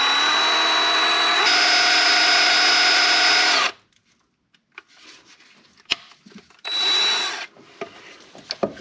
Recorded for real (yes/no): yes